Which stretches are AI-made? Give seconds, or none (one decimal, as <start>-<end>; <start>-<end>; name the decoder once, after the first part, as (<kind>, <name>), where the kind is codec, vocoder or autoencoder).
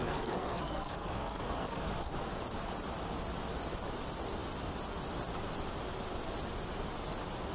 0.0-2.1 (codec, SNAC)